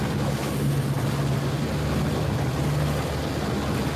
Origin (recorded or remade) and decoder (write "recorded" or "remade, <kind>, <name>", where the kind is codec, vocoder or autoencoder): recorded